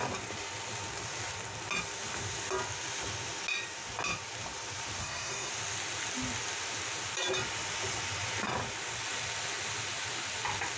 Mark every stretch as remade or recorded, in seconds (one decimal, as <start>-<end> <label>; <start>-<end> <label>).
0.0-5.0 recorded; 5.0-5.5 remade; 5.5-10.8 recorded